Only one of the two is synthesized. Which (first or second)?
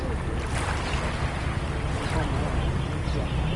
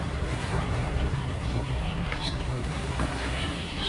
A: second